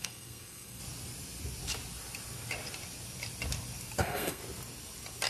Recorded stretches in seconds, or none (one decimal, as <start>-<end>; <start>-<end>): 0.8-4.0; 4.4-5.3